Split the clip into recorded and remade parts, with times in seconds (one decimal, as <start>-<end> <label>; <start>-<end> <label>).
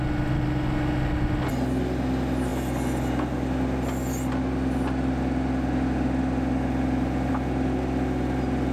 0.0-8.7 recorded